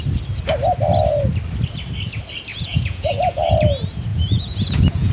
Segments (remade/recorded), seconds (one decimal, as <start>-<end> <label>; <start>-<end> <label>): 0.0-2.5 recorded; 2.5-3.5 remade; 3.5-4.1 recorded; 4.1-5.1 remade